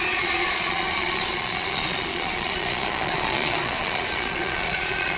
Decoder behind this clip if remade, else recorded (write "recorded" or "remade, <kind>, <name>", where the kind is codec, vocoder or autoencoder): remade, vocoder, Vocos